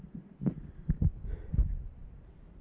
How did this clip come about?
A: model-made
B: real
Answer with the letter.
B